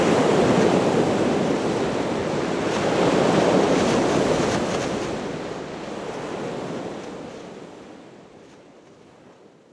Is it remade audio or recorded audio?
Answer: recorded